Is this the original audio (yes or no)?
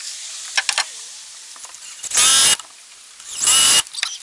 yes